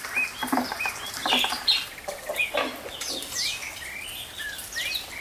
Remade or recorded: recorded